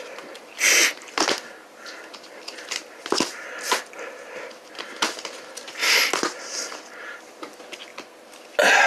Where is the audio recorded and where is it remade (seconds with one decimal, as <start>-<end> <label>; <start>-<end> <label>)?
0.0-8.9 recorded